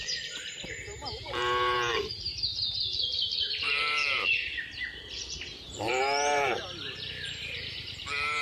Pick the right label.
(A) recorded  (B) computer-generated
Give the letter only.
B